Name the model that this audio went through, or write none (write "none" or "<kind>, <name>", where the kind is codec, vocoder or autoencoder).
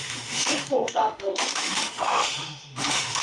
autoencoder, DAC-VAE